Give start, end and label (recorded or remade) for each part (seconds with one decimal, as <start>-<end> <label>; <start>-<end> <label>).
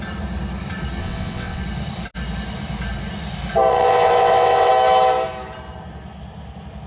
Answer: 0.0-1.0 recorded; 1.0-1.6 remade; 1.6-3.7 recorded; 3.7-4.7 remade; 4.7-6.9 recorded